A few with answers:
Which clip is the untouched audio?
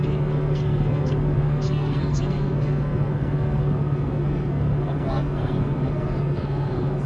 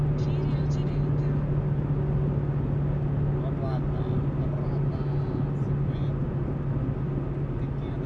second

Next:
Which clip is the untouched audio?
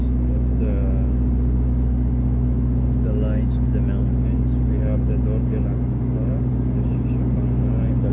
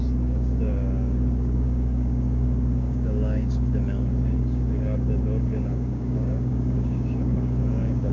first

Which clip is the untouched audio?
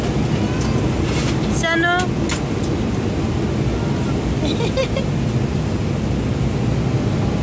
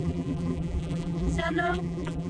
first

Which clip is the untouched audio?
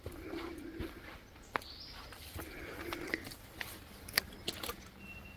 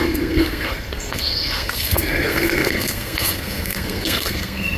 first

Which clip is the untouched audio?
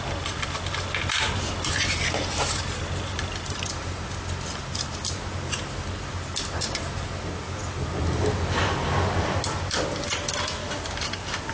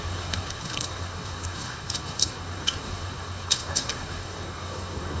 first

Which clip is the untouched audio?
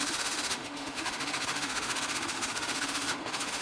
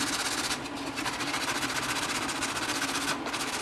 second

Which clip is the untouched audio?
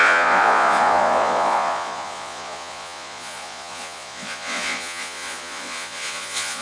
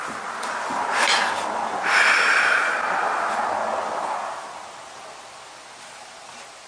second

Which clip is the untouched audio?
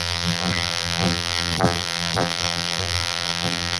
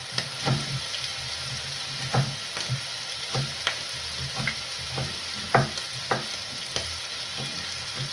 second